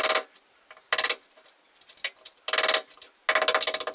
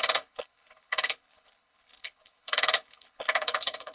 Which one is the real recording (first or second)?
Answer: first